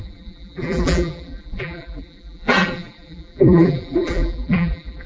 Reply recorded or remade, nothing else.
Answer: remade